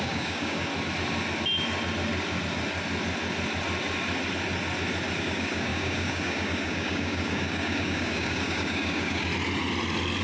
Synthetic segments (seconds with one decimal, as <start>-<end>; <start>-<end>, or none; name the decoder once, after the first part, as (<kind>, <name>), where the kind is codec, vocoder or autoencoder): 0.0-0.7 (codec, DAC); 5.2-9.3